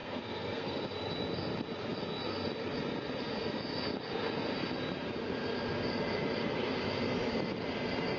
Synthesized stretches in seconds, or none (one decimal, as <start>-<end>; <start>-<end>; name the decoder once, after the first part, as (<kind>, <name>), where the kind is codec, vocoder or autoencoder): 0.0-0.8 (codec, SNAC)